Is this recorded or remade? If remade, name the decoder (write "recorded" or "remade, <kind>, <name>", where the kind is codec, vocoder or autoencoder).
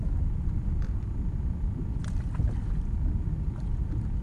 recorded